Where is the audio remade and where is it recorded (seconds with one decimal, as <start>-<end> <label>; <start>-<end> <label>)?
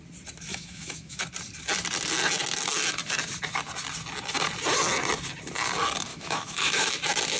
0.0-0.5 recorded; 0.5-1.2 remade; 1.2-6.1 recorded; 6.1-6.9 remade; 6.9-7.4 recorded